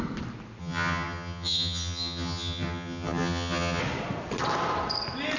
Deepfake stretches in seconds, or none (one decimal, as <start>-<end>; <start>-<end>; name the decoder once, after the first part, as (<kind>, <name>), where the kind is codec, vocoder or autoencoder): 0.6-3.8 (vocoder, HiFi-GAN)